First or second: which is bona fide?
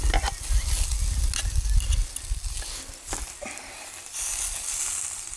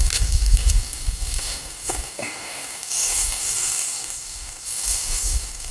first